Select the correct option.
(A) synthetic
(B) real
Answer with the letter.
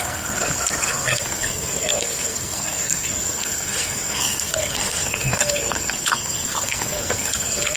A